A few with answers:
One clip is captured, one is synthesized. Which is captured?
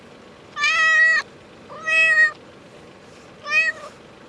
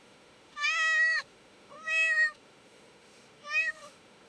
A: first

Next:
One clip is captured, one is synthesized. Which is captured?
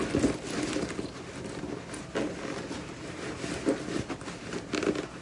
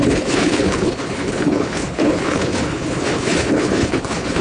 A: first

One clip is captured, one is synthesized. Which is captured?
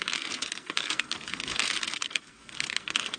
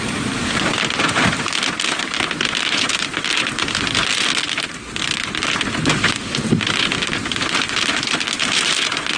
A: second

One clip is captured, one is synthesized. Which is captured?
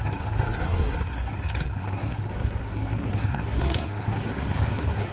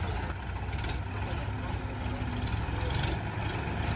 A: second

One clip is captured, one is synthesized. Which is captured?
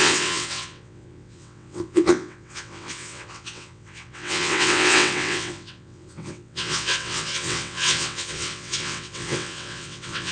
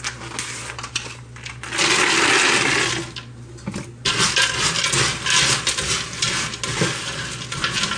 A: second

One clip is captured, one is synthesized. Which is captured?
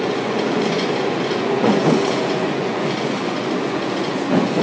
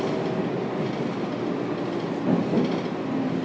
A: second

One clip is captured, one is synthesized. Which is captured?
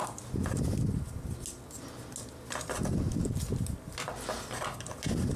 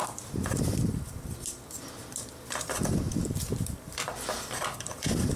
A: first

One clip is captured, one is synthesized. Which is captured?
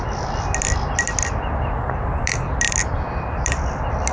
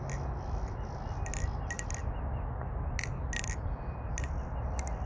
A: second